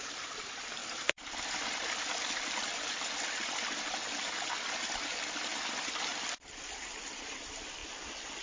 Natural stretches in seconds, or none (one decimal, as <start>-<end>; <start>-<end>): 4.0-4.9; 6.1-7.0